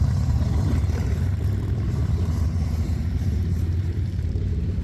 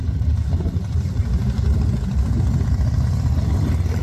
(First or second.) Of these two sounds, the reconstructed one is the first